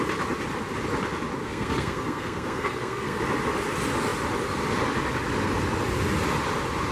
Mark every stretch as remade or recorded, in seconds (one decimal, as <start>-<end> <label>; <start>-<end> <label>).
0.0-1.4 recorded; 1.4-3.2 remade; 3.2-6.9 recorded